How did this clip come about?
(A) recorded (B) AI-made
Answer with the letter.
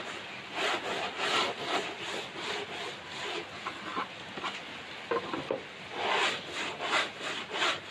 A